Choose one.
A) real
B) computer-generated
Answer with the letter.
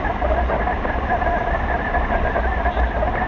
A